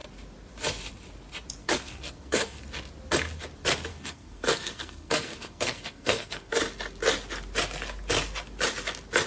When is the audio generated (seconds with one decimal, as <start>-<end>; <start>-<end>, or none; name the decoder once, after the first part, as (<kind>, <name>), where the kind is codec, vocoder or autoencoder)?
1.6-2.6 (codec, SNAC); 3.9-6.5